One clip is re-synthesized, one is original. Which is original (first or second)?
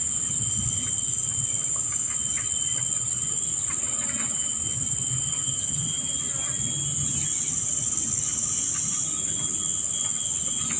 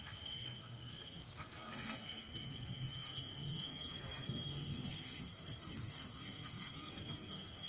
first